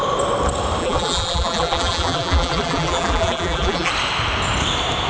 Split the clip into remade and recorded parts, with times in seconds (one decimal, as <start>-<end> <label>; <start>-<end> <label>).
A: 0.0-0.8 recorded; 0.8-3.9 remade; 3.9-5.1 recorded